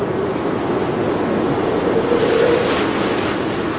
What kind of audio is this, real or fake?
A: real